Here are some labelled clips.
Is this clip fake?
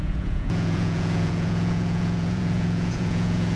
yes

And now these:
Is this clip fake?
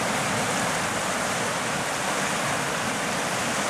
no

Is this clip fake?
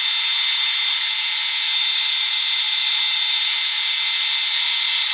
no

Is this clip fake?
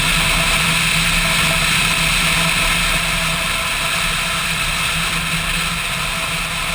no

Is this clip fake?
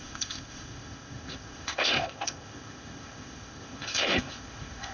yes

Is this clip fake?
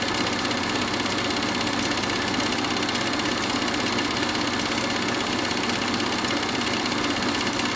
no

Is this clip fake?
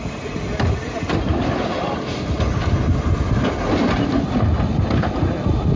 no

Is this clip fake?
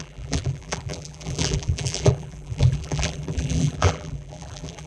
yes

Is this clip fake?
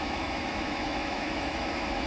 yes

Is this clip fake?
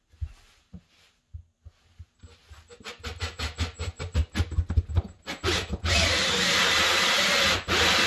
no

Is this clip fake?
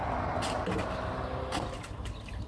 no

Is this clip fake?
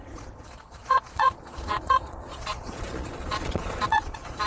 yes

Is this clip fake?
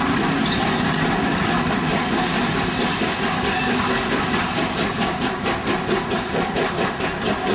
no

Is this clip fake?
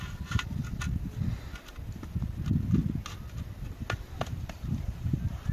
no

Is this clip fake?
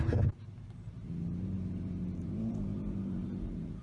yes